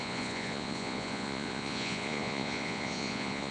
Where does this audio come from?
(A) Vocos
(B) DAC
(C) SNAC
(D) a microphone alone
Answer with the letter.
A